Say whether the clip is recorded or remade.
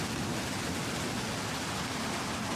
recorded